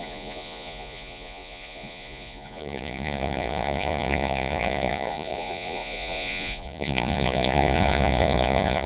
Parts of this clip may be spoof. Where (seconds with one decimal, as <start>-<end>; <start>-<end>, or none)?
0.0-8.9